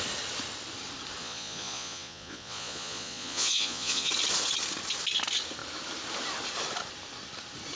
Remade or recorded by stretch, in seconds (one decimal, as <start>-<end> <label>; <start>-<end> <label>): 0.0-1.2 recorded; 1.2-4.1 remade; 4.1-7.8 recorded

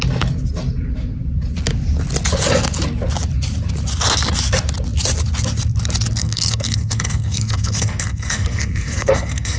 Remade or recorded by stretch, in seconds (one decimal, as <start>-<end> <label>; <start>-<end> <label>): 0.0-6.2 recorded; 6.2-9.6 remade

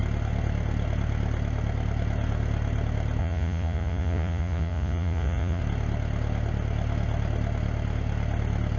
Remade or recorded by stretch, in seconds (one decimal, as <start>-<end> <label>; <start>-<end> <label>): 0.0-3.2 recorded; 3.2-5.6 remade; 5.6-8.8 recorded

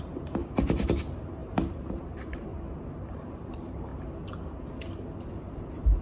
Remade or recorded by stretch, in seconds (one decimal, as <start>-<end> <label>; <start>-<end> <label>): 0.0-2.5 remade; 2.5-3.1 recorded; 3.1-3.9 remade; 3.9-5.3 recorded; 5.3-6.0 remade

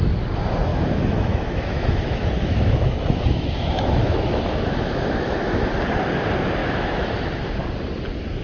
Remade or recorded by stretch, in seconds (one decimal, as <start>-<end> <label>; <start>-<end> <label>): 0.0-0.7 recorded; 0.7-5.6 remade; 5.6-6.6 recorded; 6.6-7.3 remade; 7.3-8.4 recorded

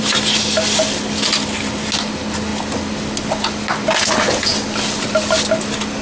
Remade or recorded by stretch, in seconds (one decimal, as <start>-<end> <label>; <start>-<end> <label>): 0.0-6.0 recorded

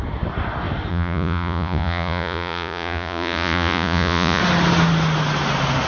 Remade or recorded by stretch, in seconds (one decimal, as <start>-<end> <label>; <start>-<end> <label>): 0.0-0.9 recorded; 0.9-4.4 remade; 4.4-5.9 recorded